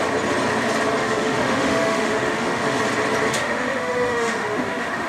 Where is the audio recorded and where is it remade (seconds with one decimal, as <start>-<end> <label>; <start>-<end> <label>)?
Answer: 0.0-1.0 recorded; 1.0-2.8 remade; 2.8-3.3 recorded; 3.3-5.1 remade